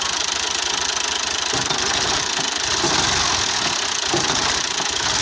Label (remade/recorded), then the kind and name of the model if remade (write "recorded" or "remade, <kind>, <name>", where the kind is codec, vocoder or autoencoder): recorded